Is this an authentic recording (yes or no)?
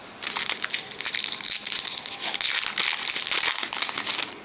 yes